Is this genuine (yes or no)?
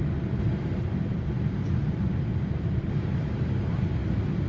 yes